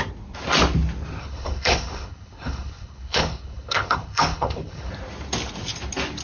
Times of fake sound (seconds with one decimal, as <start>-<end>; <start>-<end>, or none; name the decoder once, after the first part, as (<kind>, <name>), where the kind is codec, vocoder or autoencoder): 1.2-4.9 (codec, HILCodec)